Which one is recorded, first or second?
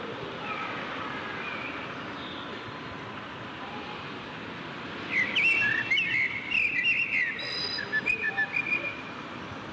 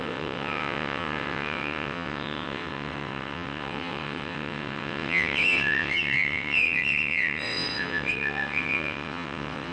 first